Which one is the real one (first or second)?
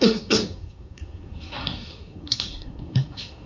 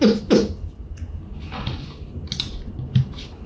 second